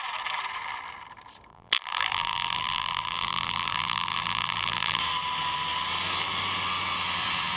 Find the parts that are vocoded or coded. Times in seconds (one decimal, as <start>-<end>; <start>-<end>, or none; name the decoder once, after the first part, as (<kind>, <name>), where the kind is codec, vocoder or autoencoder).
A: 1.5-5.0 (vocoder, BigVGAN v2)